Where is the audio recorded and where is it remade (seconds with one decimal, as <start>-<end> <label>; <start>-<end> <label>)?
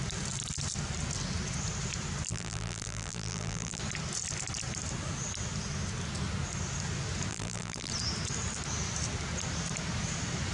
0.0-2.3 recorded; 2.3-3.8 remade; 3.8-7.3 recorded; 7.3-7.9 remade; 7.9-10.5 recorded